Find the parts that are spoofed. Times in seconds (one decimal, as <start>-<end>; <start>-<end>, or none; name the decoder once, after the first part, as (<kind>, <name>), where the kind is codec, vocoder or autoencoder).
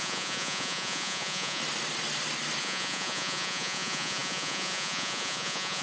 0.0-1.6 (vocoder, Vocos); 2.6-5.8